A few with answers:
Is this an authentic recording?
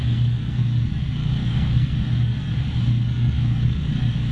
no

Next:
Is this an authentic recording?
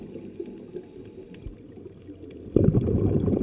yes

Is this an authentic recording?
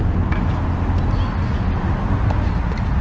yes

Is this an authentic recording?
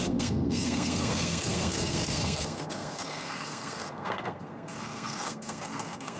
no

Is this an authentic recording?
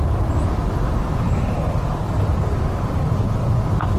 yes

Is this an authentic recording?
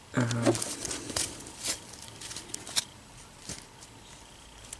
yes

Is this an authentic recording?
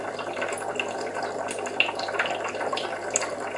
yes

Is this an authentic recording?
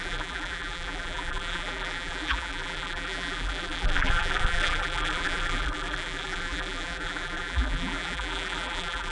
no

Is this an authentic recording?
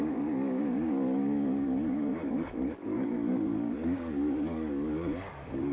no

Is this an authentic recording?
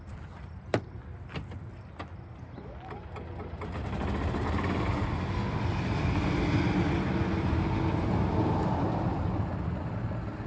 yes